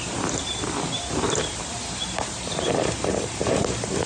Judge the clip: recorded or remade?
remade